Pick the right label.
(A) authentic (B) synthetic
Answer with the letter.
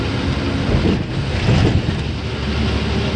A